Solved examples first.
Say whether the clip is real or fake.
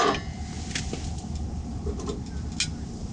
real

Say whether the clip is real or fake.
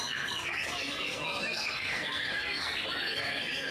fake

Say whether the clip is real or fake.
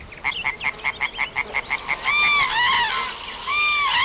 real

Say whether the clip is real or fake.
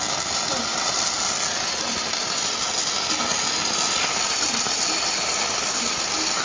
real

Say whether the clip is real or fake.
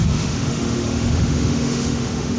fake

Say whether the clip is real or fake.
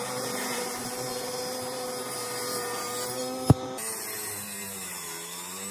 fake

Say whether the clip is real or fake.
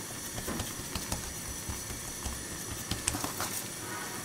real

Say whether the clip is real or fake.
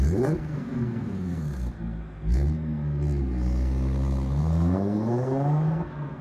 fake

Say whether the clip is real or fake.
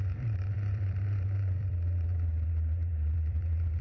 fake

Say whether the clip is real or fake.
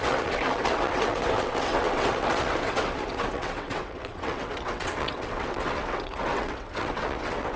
fake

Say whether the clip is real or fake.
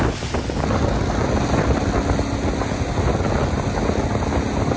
real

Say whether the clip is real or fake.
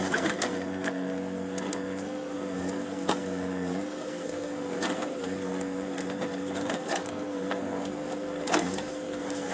fake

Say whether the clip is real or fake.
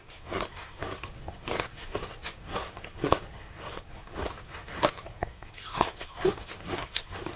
fake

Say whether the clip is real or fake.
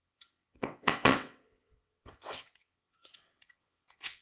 fake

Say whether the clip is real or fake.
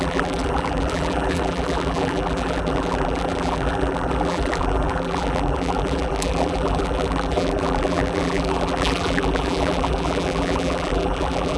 fake